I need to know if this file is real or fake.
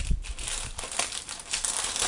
real